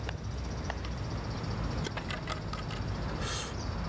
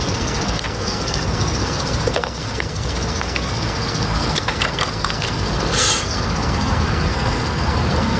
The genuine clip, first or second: first